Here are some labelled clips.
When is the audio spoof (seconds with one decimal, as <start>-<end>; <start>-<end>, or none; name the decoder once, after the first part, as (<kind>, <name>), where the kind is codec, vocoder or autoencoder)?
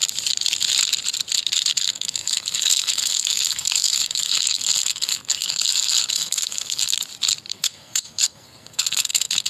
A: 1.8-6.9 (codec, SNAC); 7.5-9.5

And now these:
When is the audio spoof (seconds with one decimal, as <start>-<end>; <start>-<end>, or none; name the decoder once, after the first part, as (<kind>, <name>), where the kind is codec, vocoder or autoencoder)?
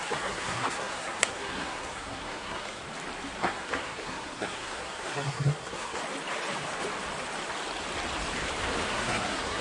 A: 0.0-2.8 (codec, SNAC); 3.4-6.0; 8.9-9.6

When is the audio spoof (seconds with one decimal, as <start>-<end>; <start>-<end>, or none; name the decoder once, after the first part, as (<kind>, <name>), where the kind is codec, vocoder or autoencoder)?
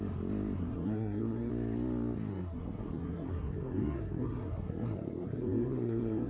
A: 0.6-1.5 (codec, SNAC); 2.3-6.3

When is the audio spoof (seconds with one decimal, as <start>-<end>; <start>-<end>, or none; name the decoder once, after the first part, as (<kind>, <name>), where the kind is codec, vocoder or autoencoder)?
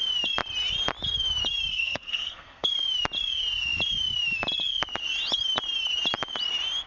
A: 1.7-2.7 (codec, SNAC)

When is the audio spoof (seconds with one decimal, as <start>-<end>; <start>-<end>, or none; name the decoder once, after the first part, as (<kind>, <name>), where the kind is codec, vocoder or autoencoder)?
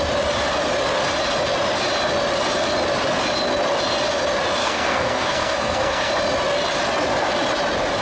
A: 4.6-6.1 (codec, SNAC)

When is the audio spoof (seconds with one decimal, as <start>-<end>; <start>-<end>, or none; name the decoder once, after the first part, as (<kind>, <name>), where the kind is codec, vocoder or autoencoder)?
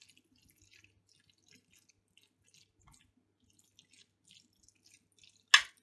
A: none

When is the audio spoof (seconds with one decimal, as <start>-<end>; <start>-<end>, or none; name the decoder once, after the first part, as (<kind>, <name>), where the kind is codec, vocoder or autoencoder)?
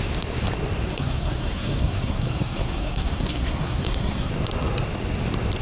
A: 0.9-4.3 (codec, SNAC)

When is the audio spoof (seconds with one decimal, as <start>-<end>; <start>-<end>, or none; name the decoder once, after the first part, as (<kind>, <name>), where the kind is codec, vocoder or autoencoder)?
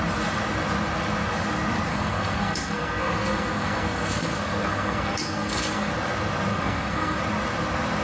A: 1.9-5.9 (codec, SNAC); 6.5-7.2